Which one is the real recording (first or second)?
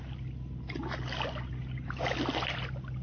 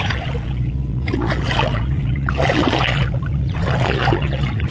first